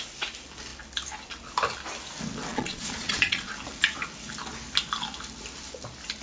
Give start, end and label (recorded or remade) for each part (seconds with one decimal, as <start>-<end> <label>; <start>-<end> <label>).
0.0-2.5 recorded; 2.5-3.5 remade; 3.5-6.2 recorded